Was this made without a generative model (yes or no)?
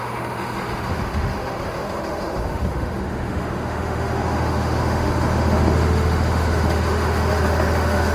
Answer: no